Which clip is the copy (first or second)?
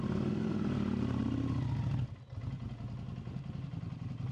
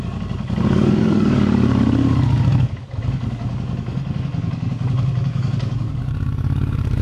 second